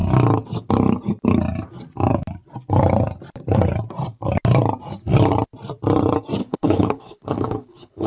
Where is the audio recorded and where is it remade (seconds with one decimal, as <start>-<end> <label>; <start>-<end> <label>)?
0.0-6.4 recorded; 6.4-8.1 remade